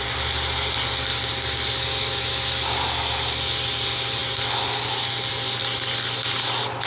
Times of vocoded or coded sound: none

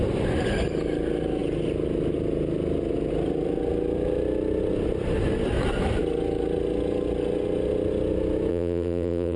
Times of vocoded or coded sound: 8.5-9.4 (vocoder, BigVGAN v2)